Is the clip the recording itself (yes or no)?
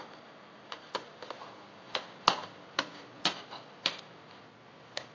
yes